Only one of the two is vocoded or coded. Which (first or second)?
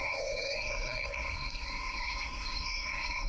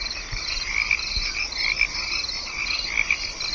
first